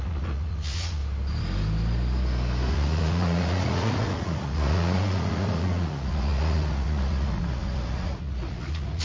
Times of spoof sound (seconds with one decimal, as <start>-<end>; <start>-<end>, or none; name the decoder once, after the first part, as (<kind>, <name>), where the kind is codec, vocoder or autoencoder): 0.0-1.0 (vocoder, Vocos); 2.7-9.0